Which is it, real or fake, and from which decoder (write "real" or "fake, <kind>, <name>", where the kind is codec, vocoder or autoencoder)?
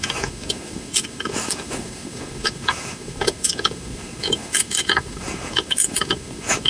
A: fake, autoencoder, DAC-VAE